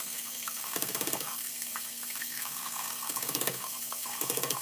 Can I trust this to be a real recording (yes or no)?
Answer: no